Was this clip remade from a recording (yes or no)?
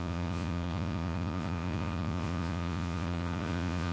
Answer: yes